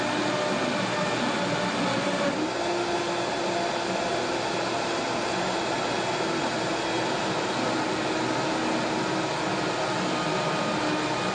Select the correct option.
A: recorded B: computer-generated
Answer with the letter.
A